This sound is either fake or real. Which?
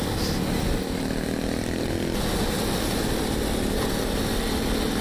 real